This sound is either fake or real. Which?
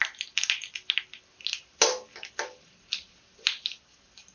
real